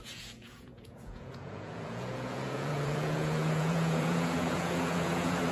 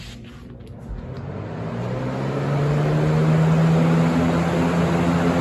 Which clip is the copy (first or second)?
first